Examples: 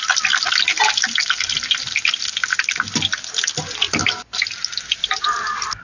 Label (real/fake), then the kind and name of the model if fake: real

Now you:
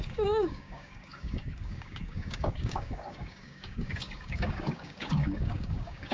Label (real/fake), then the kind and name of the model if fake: fake, codec, DAC